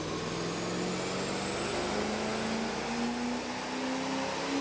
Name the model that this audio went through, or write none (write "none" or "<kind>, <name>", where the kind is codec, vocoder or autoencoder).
none